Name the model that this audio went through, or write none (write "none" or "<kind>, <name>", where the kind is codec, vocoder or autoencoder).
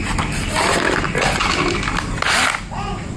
none